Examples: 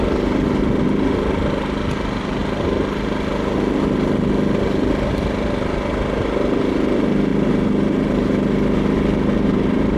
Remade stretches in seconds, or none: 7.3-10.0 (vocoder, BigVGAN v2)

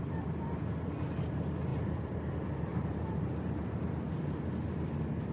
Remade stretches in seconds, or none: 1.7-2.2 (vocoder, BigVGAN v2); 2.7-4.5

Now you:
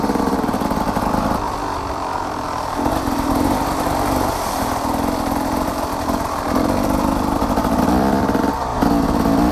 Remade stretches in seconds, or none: 0.0-9.5 (vocoder, BigVGAN v2)

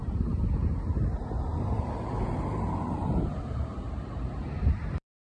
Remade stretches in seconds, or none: 1.8-5.3 (vocoder, BigVGAN v2)

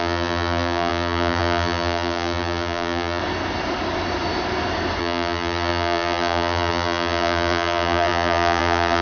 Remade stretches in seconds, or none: 0.0-3.2 (vocoder, BigVGAN v2); 5.0-9.0